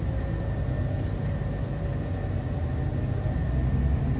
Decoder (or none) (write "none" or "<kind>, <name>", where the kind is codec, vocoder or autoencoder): none